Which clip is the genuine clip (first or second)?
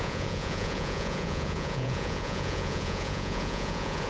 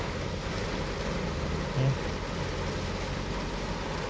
second